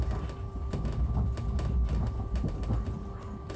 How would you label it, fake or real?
real